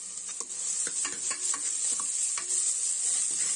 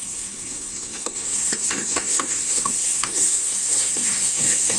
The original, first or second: first